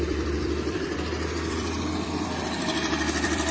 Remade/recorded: remade